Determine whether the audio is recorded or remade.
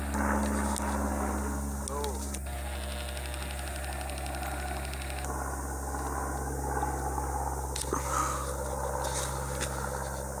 recorded